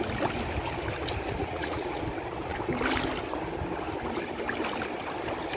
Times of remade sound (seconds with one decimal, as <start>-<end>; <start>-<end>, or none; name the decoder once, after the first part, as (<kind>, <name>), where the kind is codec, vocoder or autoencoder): 1.4-2.0 (vocoder, Vocos)